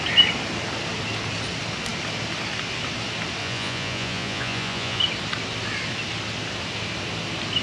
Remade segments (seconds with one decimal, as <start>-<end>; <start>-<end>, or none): 3.4-5.0